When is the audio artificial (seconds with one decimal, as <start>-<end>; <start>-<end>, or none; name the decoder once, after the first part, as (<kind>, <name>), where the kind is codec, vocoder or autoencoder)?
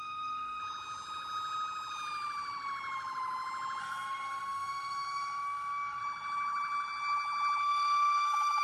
0.0-0.6 (autoencoder, DAC-VAE); 3.8-6.0; 7.6-8.6